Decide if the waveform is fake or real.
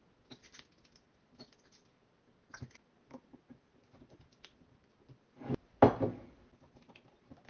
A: real